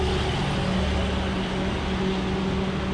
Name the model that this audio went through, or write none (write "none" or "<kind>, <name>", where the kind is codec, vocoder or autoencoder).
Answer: none